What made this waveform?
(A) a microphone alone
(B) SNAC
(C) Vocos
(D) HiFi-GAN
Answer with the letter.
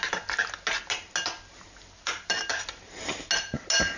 A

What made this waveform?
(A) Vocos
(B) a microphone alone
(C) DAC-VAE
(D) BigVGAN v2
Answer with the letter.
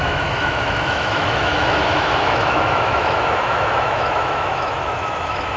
C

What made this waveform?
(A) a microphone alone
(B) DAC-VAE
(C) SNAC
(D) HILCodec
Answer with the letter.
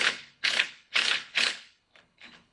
D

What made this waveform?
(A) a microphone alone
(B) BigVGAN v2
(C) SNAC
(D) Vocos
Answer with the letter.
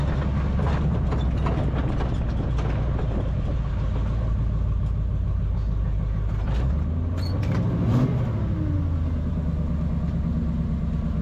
A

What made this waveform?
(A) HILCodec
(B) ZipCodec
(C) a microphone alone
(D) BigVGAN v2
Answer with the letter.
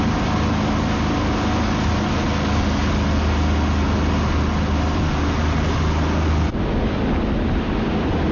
C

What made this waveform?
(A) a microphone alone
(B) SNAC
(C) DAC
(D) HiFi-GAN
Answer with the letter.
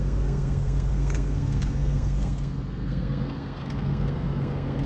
B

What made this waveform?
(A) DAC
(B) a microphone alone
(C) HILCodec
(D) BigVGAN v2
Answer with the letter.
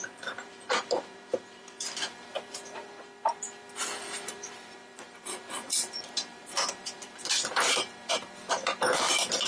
D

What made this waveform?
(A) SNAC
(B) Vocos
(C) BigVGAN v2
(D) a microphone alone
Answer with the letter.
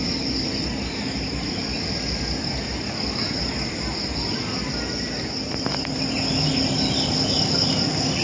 D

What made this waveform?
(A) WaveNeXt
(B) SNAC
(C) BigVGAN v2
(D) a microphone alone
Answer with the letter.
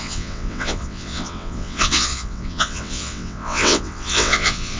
A